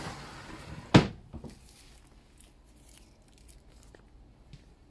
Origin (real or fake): real